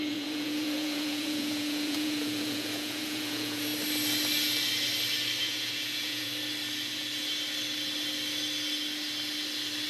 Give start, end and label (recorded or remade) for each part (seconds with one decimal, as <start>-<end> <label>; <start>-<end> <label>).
0.0-3.7 remade; 3.7-5.4 recorded; 5.4-6.3 remade; 6.3-9.9 recorded